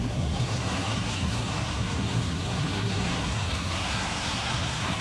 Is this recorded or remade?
remade